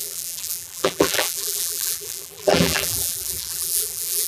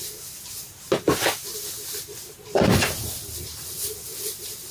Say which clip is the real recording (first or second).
second